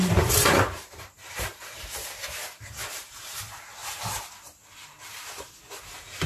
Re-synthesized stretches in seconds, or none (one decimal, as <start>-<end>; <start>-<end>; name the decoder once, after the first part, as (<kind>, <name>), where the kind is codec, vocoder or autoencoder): 0.0-1.5 (vocoder, BigVGAN v2); 2.6-3.8; 5.8-6.3